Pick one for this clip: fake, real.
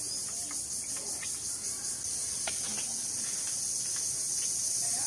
real